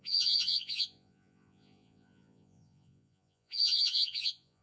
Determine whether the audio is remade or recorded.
remade